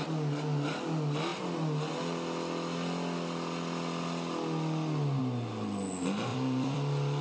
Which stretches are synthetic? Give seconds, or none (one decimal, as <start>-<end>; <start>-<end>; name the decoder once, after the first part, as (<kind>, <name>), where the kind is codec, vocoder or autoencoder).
6.3-7.2 (vocoder, BigVGAN v2)